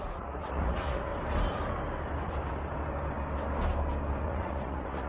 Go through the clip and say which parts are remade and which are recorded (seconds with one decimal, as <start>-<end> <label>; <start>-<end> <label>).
0.0-1.1 remade; 1.1-4.2 recorded; 4.2-5.1 remade